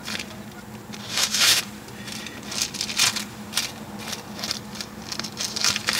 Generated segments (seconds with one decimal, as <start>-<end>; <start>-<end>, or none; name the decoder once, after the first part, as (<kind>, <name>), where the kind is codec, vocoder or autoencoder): 1.1-1.6 (autoencoder, DAC-VAE)